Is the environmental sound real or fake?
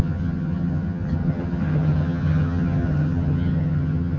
fake